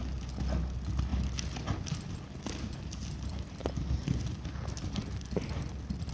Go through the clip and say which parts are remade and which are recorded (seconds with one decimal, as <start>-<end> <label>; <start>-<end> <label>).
0.0-6.1 recorded